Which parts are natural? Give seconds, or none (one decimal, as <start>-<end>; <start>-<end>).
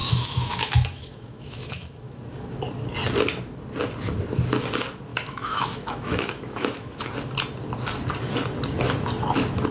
2.2-5.1; 7.1-9.7